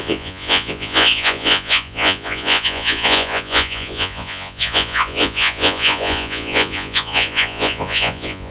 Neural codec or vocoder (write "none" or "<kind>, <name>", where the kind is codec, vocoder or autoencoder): vocoder, Vocos